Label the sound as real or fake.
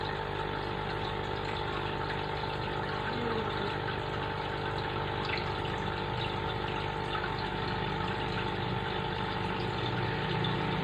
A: fake